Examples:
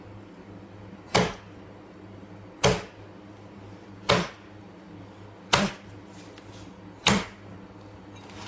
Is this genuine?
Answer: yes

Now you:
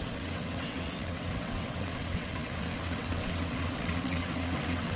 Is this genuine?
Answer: no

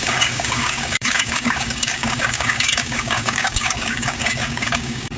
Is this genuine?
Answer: no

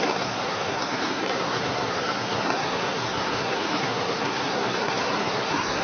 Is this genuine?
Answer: no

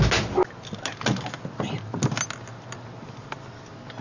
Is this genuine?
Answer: yes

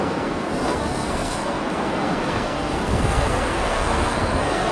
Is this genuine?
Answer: no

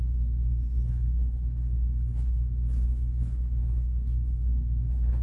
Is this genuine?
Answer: no